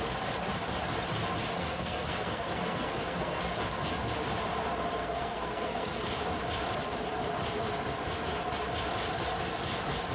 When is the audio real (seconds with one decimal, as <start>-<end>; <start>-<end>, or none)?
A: 0.0-1.6; 3.4-5.0; 6.0-10.1